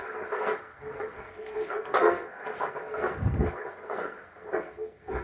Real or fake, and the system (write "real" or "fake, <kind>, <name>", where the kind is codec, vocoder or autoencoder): fake, codec, SNAC